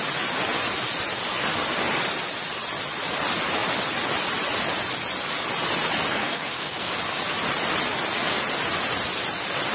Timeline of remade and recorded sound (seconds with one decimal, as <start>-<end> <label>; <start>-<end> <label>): 0.0-6.2 recorded; 6.2-6.9 remade; 6.9-9.7 recorded